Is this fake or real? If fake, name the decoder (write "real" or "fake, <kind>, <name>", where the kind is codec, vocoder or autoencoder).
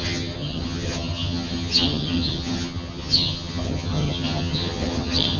fake, vocoder, HiFi-GAN